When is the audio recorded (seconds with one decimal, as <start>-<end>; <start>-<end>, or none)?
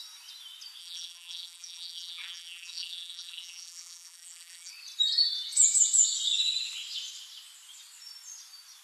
0.0-0.8; 4.7-8.8